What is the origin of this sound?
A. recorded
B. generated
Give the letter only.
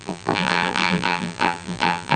B